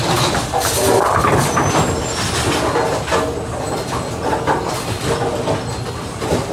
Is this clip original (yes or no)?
yes